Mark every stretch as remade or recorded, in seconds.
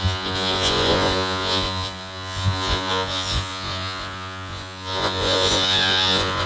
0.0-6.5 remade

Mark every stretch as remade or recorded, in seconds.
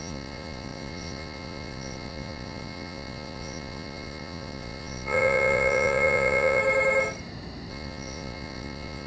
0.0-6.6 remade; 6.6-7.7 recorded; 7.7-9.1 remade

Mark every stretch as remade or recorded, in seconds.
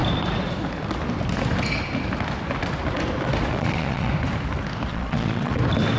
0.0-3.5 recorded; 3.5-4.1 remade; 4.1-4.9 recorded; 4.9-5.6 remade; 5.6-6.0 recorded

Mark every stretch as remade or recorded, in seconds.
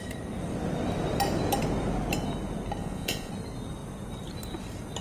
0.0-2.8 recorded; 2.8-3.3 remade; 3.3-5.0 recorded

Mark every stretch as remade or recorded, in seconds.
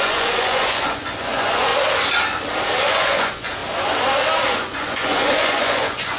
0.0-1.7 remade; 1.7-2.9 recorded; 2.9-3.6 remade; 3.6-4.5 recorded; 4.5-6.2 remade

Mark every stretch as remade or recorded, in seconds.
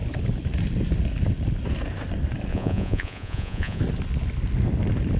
0.0-2.5 recorded; 2.5-3.8 remade; 3.8-5.2 recorded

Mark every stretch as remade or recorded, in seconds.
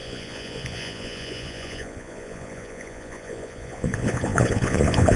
0.0-5.2 remade